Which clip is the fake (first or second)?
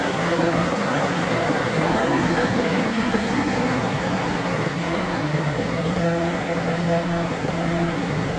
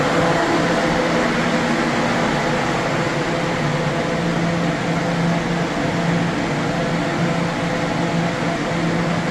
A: first